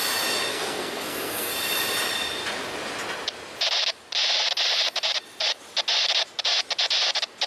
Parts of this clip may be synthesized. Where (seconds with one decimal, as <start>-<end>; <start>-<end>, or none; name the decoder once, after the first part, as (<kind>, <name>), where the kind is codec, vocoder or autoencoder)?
0.5-1.5 (codec, SNAC)